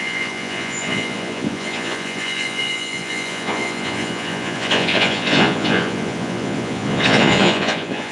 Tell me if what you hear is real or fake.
fake